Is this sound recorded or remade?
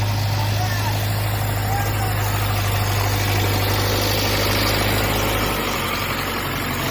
recorded